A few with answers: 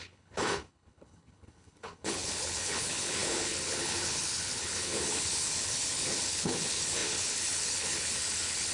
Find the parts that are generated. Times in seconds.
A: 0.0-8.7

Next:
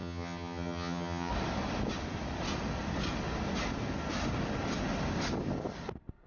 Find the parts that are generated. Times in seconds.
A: 0.0-1.3

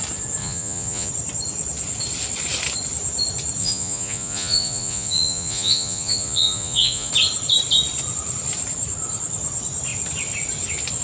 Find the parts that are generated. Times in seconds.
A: 0.4-1.1; 3.6-7.1

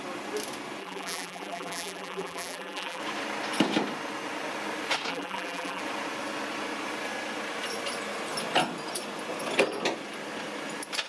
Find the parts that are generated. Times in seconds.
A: 0.8-3.0; 5.1-5.8

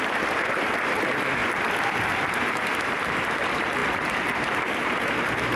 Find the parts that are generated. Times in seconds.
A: 0.0-1.4; 2.4-5.6

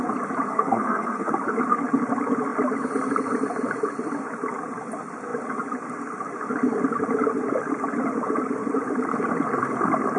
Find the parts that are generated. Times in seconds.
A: 0.5-1.3

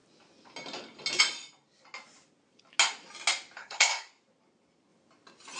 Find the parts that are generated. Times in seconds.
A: 3.6-4.1

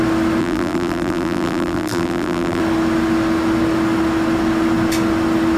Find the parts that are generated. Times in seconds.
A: 0.4-2.6